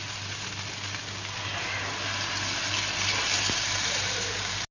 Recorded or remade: recorded